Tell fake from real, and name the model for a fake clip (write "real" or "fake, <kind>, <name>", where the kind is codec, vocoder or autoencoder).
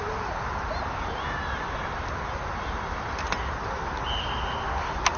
real